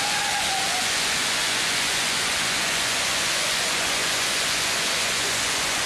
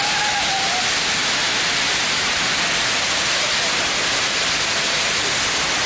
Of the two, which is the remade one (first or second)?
first